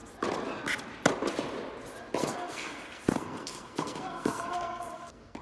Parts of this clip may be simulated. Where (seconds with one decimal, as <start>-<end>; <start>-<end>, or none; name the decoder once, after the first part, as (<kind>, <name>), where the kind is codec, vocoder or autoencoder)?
2.2-5.4 (codec, SNAC)